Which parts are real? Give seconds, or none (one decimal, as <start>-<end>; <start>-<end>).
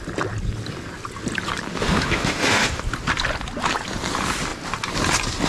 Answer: 0.0-1.7; 2.8-5.5